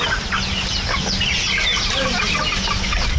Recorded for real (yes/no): yes